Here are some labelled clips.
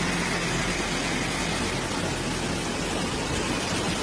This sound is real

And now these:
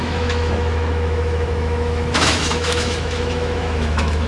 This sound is fake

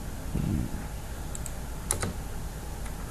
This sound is real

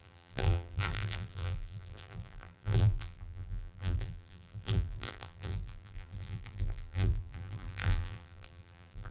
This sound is fake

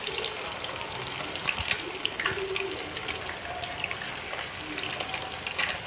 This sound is real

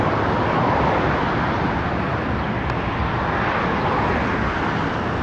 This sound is real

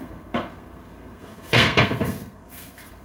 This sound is fake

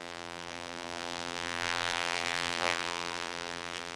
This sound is fake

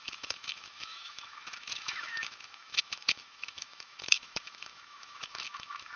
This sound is fake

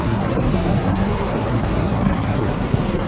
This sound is fake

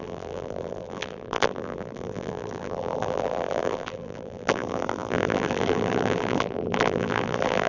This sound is fake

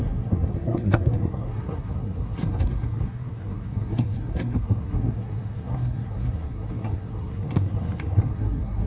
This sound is fake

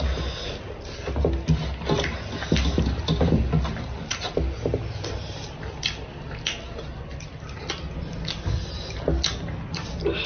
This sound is real